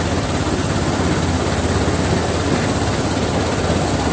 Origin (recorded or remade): recorded